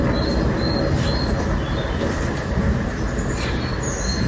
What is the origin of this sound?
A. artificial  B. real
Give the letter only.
B